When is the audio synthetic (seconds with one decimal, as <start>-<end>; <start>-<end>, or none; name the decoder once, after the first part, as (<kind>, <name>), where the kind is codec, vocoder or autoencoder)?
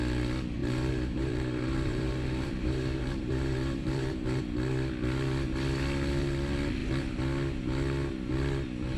0.6-4.4 (vocoder, BigVGAN v2)